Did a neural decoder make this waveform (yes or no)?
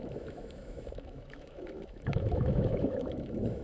yes